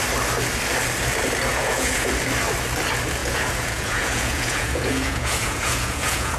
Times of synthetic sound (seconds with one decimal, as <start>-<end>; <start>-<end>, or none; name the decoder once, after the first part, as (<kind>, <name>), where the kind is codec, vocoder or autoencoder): 1.5-2.1 (vocoder, Vocos); 3.2-6.4